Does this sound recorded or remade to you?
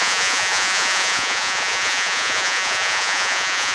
remade